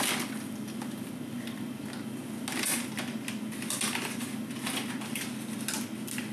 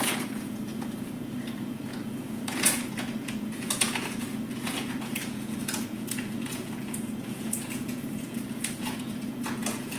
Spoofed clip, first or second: second